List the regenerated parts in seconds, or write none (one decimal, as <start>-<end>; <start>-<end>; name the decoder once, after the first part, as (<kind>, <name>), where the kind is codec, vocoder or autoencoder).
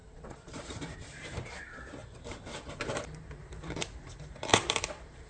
0.0-1.5 (vocoder, BigVGAN v2); 2.0-5.3